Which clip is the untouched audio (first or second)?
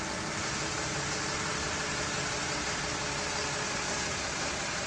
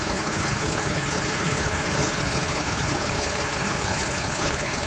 first